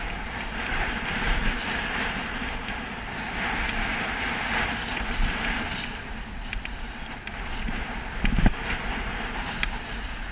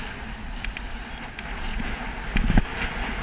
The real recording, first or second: second